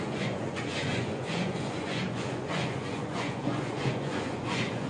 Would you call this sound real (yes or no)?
no